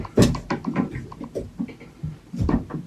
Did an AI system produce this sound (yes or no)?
no